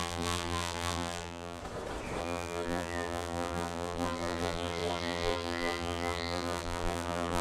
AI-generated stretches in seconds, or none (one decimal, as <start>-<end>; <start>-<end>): 0.0-1.6; 2.2-7.4